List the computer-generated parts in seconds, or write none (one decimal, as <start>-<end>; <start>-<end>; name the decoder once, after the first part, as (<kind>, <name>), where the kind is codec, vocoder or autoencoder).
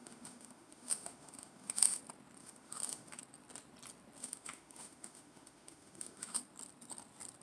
0.0-2.0 (autoencoder, DAC-VAE); 2.4-3.2; 4.2-6.4